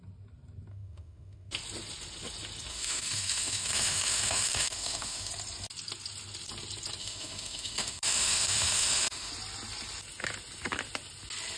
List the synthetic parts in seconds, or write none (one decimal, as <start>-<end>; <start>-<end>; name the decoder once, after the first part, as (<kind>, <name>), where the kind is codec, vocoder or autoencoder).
0.7-1.5 (autoencoder, DAC-VAE); 2.7-5.3; 7.0-9.3